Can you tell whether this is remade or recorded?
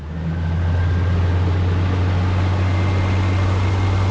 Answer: recorded